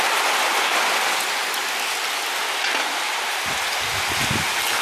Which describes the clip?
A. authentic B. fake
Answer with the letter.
A